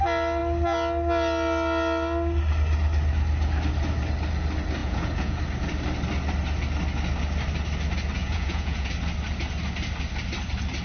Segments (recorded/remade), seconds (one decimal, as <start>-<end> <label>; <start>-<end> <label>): 0.0-4.8 recorded; 4.8-5.4 remade; 5.4-8.2 recorded; 8.2-8.9 remade; 8.9-10.8 recorded

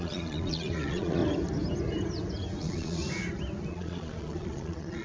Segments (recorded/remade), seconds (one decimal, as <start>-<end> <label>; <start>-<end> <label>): 0.0-1.2 remade; 1.2-2.6 recorded; 2.6-3.0 remade; 3.0-3.7 recorded; 3.7-5.0 remade

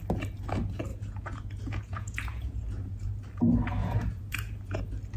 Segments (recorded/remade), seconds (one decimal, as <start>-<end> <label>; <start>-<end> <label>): 0.0-0.9 recorded; 0.9-3.1 remade; 3.1-3.8 recorded; 3.8-4.8 remade; 4.8-5.2 recorded